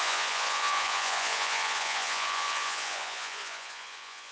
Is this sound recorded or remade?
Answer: remade